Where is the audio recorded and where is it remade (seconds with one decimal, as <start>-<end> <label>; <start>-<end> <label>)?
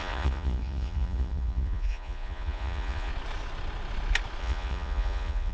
0.0-3.1 remade; 3.1-4.4 recorded; 4.4-5.5 remade